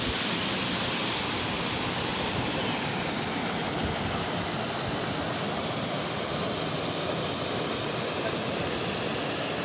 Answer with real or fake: real